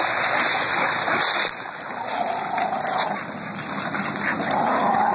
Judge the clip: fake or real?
real